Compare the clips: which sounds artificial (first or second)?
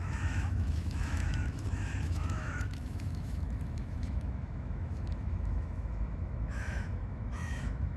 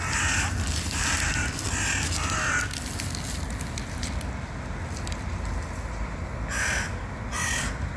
first